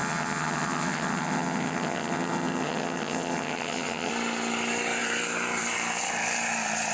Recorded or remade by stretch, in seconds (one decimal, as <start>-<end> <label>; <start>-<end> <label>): 0.0-4.1 remade; 4.1-6.9 recorded